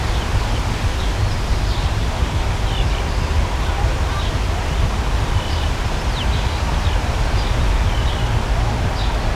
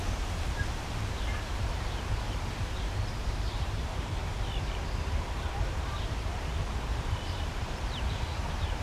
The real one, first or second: first